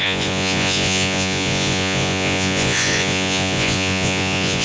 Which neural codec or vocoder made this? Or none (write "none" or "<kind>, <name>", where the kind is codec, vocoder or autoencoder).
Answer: vocoder, Vocos